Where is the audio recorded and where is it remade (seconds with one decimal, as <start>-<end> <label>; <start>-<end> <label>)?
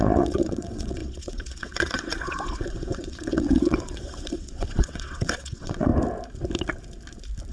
0.0-5.9 remade; 5.9-7.5 recorded